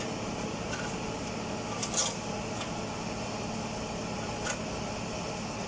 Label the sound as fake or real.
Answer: real